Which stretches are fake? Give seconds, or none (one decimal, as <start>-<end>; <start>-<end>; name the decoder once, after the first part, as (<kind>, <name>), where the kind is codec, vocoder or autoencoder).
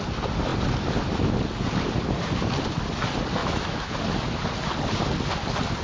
3.4-3.9 (autoencoder, DAC-VAE)